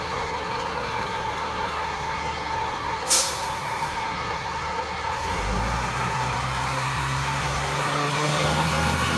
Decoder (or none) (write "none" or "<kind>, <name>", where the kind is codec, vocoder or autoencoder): codec, SNAC